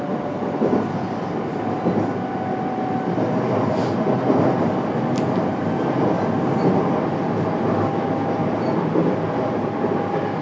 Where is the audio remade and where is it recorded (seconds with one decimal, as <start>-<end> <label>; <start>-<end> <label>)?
0.0-10.4 recorded